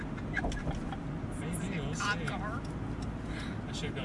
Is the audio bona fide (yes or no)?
yes